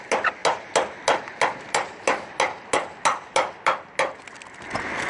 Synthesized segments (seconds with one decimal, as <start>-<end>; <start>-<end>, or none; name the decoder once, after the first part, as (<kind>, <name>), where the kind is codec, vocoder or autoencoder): none